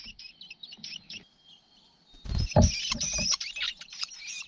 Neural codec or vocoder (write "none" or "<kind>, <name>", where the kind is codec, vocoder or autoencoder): none